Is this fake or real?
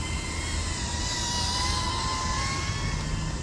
real